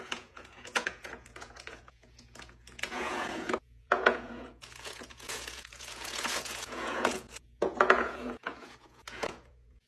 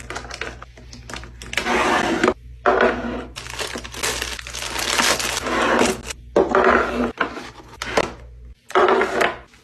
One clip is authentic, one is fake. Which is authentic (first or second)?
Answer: second